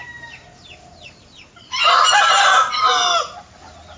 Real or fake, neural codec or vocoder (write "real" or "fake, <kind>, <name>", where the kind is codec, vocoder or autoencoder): real